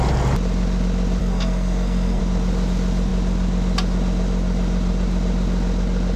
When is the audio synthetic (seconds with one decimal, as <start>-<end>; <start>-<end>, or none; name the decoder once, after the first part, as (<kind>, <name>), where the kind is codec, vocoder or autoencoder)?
1.2-2.2 (codec, SNAC)